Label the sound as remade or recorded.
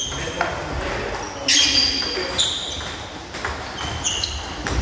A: recorded